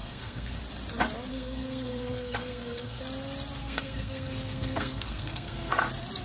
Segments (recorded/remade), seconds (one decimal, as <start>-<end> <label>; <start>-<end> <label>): 0.0-0.6 remade; 0.6-1.3 recorded; 1.3-3.0 remade; 3.0-3.6 recorded; 3.6-5.8 remade; 5.8-6.2 recorded